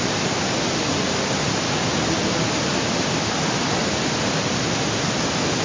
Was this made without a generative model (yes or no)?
yes